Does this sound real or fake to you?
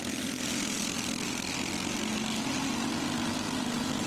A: real